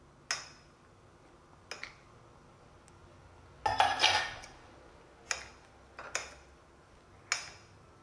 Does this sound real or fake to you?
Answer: real